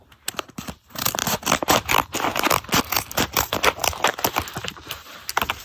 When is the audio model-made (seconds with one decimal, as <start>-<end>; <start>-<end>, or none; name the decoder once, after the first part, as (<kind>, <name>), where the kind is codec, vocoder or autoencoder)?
0.0-1.2 (vocoder, BigVGAN v2); 2.8-3.8